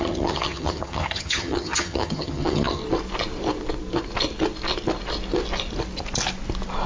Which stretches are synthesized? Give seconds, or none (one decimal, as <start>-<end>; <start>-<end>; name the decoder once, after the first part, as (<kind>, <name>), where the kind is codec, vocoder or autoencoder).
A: 0.0-2.8 (vocoder, HiFi-GAN)